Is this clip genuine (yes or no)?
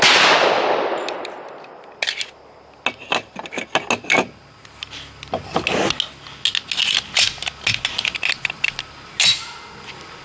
yes